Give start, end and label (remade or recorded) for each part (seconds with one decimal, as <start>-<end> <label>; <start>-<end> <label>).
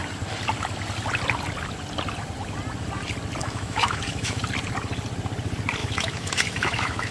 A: 0.0-3.4 recorded; 3.4-4.4 remade; 4.4-5.8 recorded; 5.8-7.1 remade